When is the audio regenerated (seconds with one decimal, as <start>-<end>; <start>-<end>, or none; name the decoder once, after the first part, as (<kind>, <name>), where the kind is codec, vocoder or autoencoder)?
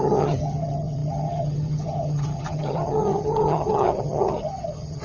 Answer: 0.0-5.0 (vocoder, HiFi-GAN)